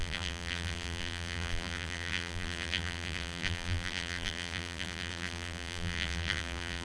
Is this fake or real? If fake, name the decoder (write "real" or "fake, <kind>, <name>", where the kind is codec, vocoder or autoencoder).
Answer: fake, vocoder, BigVGAN v2